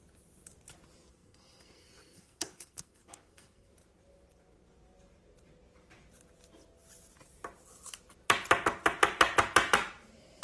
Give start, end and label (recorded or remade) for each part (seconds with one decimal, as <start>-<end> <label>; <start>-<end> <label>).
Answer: 0.0-1.1 recorded; 1.1-3.7 remade; 3.7-10.4 recorded